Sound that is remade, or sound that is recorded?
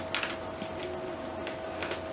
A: recorded